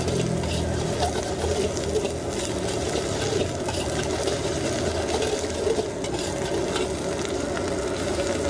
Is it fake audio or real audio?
real